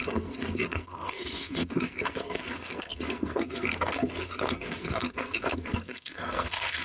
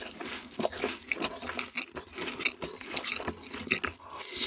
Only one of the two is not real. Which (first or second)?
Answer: first